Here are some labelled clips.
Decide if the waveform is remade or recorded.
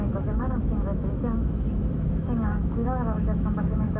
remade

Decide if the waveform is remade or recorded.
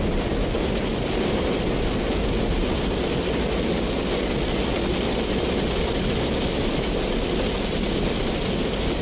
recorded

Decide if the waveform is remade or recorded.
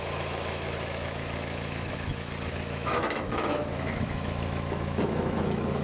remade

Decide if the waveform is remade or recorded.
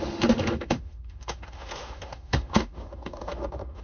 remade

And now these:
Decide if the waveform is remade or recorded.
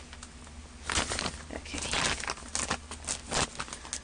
recorded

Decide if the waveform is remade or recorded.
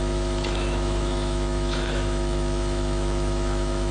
remade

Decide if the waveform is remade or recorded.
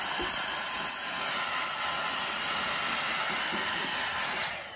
recorded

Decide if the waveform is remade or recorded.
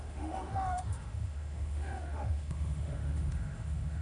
remade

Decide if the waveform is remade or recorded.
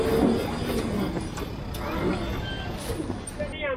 recorded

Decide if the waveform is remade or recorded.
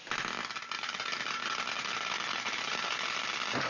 recorded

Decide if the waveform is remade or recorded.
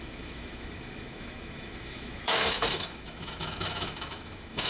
remade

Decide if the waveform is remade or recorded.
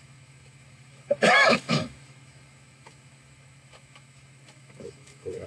remade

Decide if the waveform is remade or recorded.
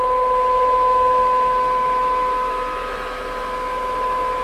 remade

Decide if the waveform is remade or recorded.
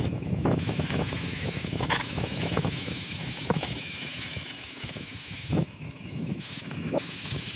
remade